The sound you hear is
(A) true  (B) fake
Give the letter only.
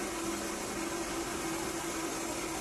A